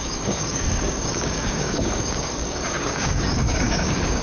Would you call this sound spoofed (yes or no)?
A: yes